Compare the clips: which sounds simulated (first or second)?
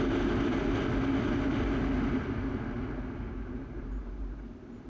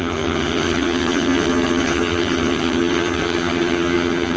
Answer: second